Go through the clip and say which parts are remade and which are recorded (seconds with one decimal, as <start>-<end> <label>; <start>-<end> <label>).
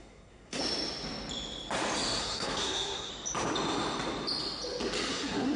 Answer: 0.0-0.6 remade; 0.6-2.2 recorded; 2.2-3.1 remade; 3.1-5.1 recorded; 5.1-5.6 remade